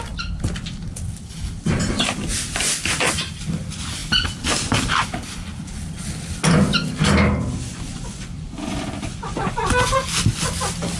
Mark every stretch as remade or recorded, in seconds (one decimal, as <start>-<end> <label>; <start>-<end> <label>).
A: 0.0-7.7 recorded; 7.7-9.7 remade; 9.7-11.0 recorded